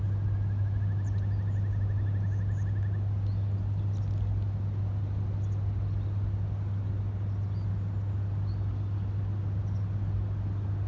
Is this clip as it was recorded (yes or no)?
yes